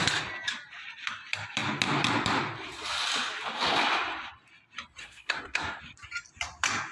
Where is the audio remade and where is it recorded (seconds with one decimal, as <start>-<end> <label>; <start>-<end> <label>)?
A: 0.0-5.0 recorded; 5.0-5.8 remade; 5.8-6.9 recorded

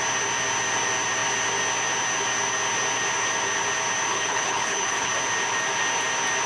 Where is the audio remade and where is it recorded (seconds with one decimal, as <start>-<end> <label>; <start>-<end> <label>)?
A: 0.0-4.1 recorded; 4.1-5.1 remade; 5.1-6.5 recorded

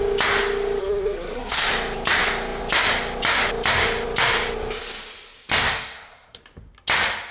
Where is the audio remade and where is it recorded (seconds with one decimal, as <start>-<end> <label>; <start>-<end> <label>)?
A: 0.0-0.8 recorded; 0.8-1.7 remade; 1.7-5.6 recorded; 5.6-6.4 remade; 6.4-7.3 recorded

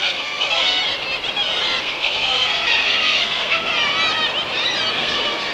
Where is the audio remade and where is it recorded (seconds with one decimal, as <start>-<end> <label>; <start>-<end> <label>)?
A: 0.0-0.8 remade; 0.8-1.8 recorded; 1.8-3.7 remade; 3.7-4.9 recorded; 4.9-5.5 remade

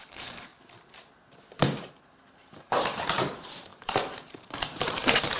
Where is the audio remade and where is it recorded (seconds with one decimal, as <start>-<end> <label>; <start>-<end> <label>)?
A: 0.0-0.5 remade; 0.5-2.6 recorded; 2.6-5.4 remade

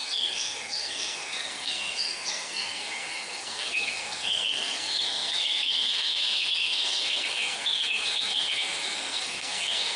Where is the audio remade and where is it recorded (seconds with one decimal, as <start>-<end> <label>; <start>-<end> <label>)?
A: 0.0-10.0 remade

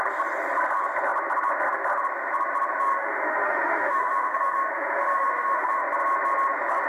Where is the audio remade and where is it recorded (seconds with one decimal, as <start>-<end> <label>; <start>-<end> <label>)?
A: 0.0-2.9 recorded; 2.9-5.8 remade; 5.8-6.9 recorded

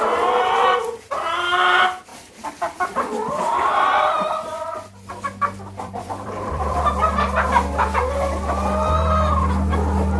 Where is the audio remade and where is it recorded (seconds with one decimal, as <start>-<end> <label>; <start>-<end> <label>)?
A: 0.0-2.1 recorded; 2.1-6.8 remade; 6.8-10.2 recorded